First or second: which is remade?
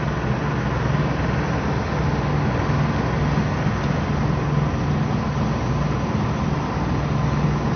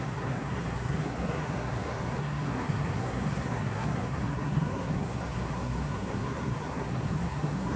second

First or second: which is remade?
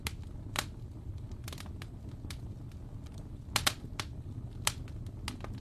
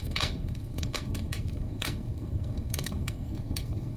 second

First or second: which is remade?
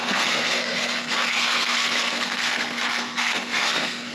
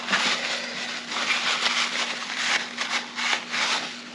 first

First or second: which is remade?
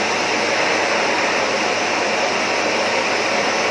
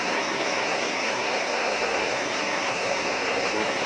second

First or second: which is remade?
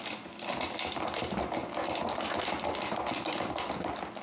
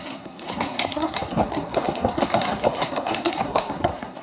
second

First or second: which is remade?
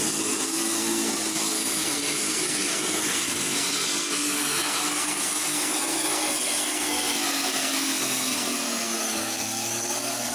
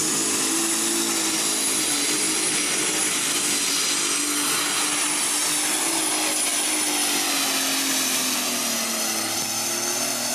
first